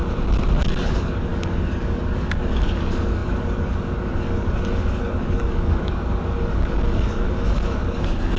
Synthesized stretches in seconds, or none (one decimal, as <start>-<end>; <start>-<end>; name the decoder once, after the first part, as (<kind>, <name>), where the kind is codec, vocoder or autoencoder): 0.6-8.4 (codec, DAC)